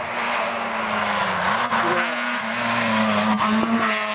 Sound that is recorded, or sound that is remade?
recorded